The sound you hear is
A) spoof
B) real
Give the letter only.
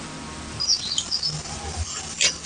B